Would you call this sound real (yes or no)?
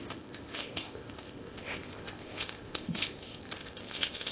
no